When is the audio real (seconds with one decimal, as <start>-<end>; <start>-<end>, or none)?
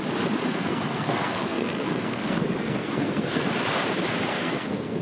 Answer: 0.0-0.5; 3.5-4.3